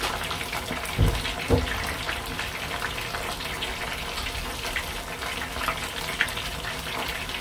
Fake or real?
real